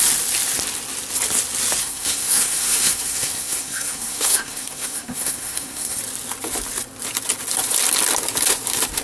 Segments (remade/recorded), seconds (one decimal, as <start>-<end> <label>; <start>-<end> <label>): 0.0-1.8 recorded; 1.8-6.0 remade; 6.0-9.0 recorded